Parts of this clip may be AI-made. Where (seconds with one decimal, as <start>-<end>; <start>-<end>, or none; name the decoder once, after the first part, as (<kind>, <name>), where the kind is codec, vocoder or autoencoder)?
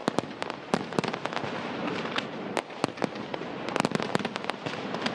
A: none